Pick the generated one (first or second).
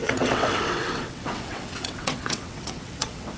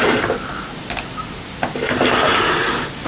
first